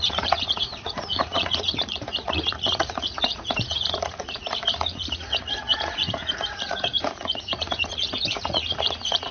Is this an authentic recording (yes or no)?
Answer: no